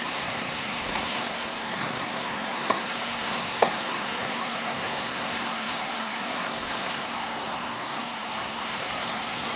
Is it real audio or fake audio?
fake